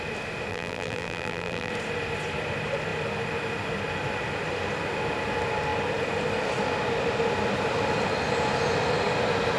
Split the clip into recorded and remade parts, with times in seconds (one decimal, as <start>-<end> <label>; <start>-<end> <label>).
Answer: 0.0-0.5 recorded; 0.5-1.7 remade; 1.7-9.6 recorded